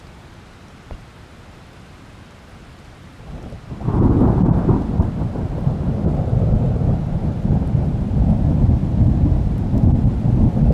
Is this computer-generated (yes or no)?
no